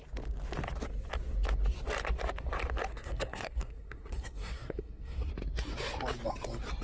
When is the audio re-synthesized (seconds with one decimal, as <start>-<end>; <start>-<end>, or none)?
2.9-5.3